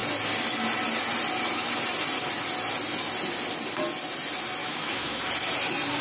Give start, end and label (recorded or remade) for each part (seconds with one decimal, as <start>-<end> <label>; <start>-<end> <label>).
0.0-4.6 recorded; 4.6-5.2 remade; 5.2-6.0 recorded